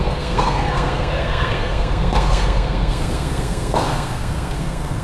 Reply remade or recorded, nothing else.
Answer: remade